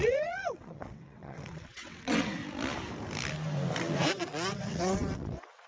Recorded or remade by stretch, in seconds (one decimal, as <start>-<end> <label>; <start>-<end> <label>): 0.0-2.4 remade; 2.4-4.1 recorded; 4.1-5.7 remade

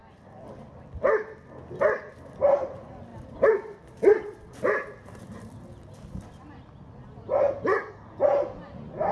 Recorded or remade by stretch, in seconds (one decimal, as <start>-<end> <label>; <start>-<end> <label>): 0.0-9.1 recorded

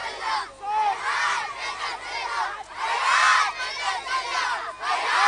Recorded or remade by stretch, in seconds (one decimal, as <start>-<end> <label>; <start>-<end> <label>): 0.0-5.3 recorded